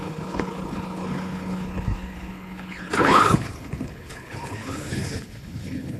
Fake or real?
fake